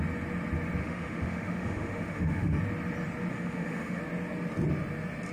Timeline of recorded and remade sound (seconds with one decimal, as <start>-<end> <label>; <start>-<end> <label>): 0.0-0.8 recorded; 0.8-2.6 remade; 2.6-3.3 recorded; 3.3-4.0 remade; 4.0-5.3 recorded

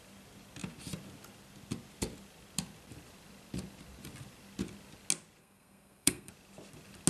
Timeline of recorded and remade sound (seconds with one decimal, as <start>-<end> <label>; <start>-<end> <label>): 0.0-5.4 recorded; 5.4-6.3 remade; 6.3-7.1 recorded